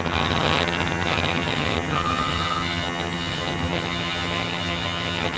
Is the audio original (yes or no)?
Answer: no